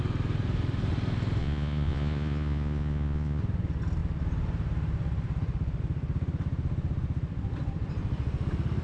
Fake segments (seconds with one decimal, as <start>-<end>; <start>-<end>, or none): 1.4-3.4